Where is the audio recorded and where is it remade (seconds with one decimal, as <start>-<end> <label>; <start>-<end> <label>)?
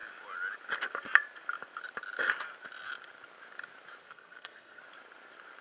0.0-4.0 recorded; 4.0-4.8 remade; 4.8-5.6 recorded